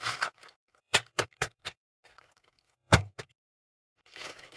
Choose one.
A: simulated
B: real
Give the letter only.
A